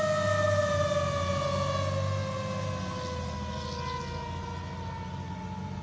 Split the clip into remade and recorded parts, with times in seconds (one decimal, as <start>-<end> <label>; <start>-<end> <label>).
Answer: 0.0-5.8 recorded